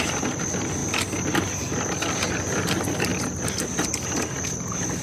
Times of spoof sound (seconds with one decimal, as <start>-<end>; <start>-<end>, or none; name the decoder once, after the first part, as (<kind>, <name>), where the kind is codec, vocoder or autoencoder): none